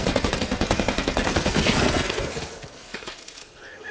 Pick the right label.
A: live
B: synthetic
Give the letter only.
B